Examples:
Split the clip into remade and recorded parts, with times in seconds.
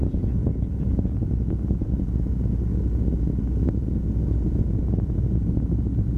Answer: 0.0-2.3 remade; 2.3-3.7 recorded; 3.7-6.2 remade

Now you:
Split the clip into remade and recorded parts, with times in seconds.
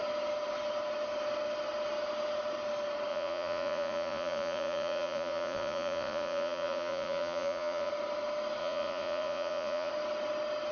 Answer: 0.0-3.1 recorded; 3.1-7.9 remade; 7.9-8.6 recorded; 8.6-9.9 remade; 9.9-10.7 recorded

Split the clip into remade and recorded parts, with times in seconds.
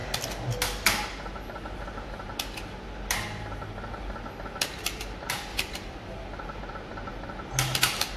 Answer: 0.0-5.5 recorded; 5.5-6.7 remade; 6.7-8.2 recorded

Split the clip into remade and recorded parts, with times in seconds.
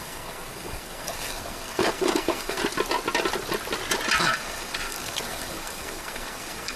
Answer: 0.0-2.6 remade; 2.6-4.2 recorded; 4.2-6.8 remade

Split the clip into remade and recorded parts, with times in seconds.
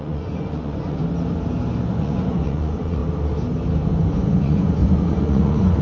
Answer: 0.0-1.0 remade; 1.0-1.9 recorded; 1.9-3.0 remade; 3.0-4.0 recorded; 4.0-5.8 remade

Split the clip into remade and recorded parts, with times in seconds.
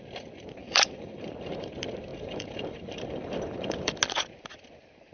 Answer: 0.0-0.6 recorded; 0.6-1.7 remade; 1.7-2.1 recorded; 2.1-4.0 remade; 4.0-5.1 recorded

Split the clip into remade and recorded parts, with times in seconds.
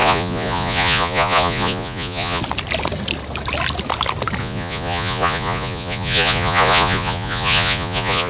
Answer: 0.0-2.4 remade; 2.4-4.4 recorded; 4.4-8.3 remade